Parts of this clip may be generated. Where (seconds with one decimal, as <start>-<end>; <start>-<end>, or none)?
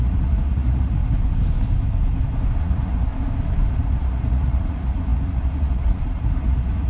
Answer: 0.0-1.0; 2.6-3.1; 3.8-6.9